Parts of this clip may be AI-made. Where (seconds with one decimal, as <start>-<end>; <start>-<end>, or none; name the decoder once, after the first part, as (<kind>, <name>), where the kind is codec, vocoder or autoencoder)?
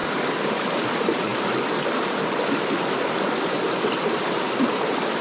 none